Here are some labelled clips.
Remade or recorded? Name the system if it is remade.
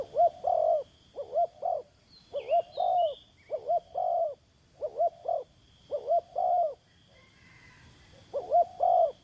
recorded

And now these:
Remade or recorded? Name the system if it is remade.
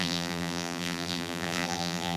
remade, vocoder, BigVGAN v2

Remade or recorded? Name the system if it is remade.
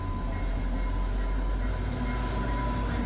recorded